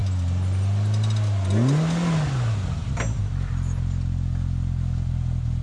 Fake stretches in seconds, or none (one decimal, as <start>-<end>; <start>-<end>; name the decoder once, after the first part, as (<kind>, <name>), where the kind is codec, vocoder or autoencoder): none